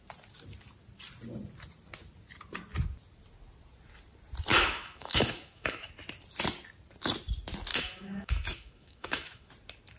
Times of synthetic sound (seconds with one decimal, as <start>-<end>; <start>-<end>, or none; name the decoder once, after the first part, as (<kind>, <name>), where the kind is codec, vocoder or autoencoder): 4.5-5.9 (autoencoder, DAC-VAE); 7.7-9.5